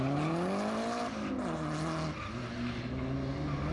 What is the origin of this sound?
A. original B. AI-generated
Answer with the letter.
A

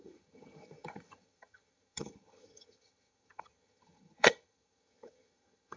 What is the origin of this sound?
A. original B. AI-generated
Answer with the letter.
B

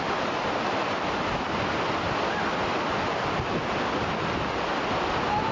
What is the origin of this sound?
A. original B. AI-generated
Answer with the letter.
A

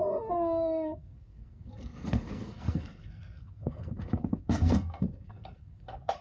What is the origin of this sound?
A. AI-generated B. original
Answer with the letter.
A